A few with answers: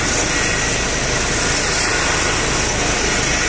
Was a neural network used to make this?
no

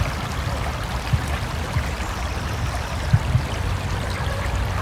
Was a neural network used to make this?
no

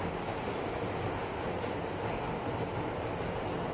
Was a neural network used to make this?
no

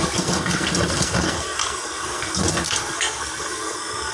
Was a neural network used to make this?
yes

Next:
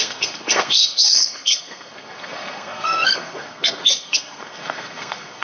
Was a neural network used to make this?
yes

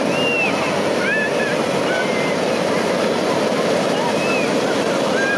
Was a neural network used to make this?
no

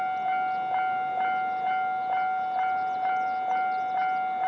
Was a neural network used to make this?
no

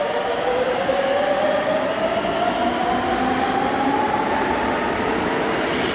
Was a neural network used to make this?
no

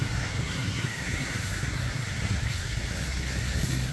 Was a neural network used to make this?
yes